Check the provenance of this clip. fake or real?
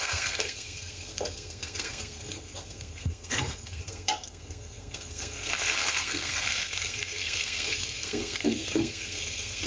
fake